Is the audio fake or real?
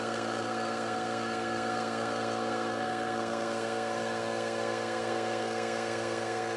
fake